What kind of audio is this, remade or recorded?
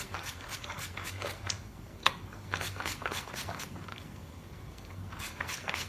remade